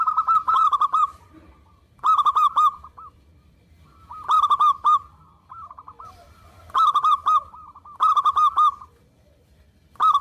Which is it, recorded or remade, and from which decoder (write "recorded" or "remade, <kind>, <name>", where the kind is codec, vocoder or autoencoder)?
remade, vocoder, BigVGAN v2